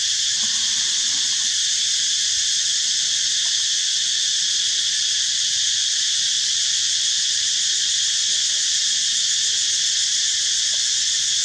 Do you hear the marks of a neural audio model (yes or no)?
yes